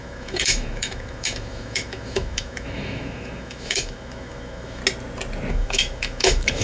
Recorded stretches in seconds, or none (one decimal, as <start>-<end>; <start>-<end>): 4.8-5.5